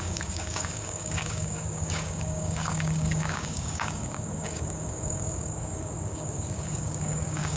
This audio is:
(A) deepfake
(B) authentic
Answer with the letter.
A